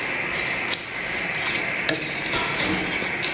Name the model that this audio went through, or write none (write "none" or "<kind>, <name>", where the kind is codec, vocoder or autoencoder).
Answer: none